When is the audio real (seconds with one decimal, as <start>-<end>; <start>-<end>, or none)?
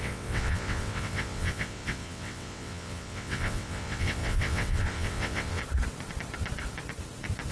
5.6-7.5